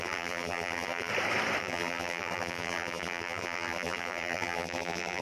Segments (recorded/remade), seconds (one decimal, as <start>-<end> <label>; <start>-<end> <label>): 0.0-1.1 remade; 1.1-1.6 recorded; 1.6-5.2 remade